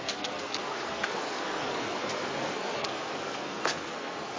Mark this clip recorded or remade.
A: remade